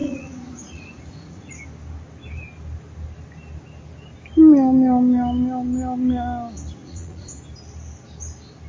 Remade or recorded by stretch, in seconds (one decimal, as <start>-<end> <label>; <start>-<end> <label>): 0.0-1.5 remade; 1.5-6.8 recorded; 6.8-7.4 remade; 7.4-8.7 recorded